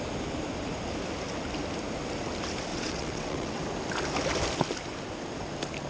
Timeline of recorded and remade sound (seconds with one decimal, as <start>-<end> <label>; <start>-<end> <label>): 0.0-2.7 recorded; 2.7-3.6 remade; 3.6-5.9 recorded